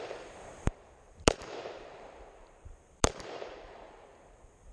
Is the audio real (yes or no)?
no